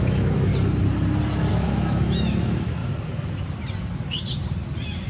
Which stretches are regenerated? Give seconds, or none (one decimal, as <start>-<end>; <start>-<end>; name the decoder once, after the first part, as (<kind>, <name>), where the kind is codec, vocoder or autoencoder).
0.0-0.5 (autoencoder, DAC-VAE); 1.5-2.8